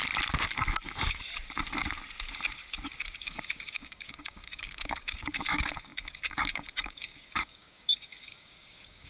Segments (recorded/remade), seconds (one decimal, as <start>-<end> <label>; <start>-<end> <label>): 0.0-3.0 recorded; 3.0-9.1 remade